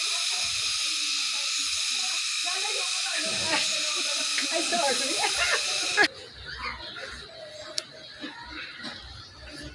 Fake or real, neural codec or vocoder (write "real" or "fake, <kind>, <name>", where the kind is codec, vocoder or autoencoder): real